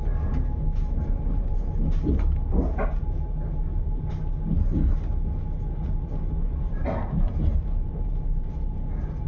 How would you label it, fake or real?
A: real